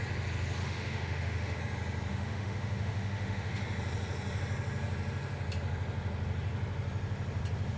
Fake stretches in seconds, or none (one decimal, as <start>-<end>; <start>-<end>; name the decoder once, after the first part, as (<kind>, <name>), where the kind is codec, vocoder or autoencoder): 0.6-1.6 (autoencoder, DAC-VAE); 2.1-3.6